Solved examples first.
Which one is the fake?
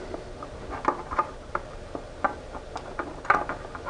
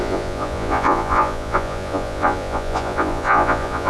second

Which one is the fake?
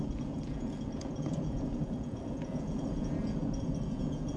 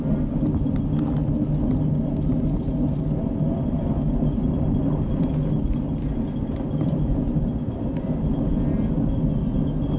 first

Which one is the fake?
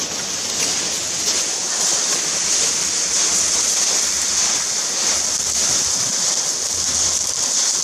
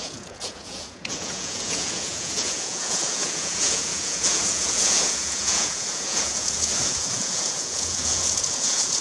second